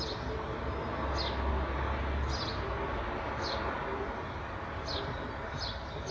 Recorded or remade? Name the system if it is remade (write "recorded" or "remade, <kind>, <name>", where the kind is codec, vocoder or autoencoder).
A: recorded